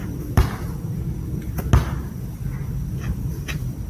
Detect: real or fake real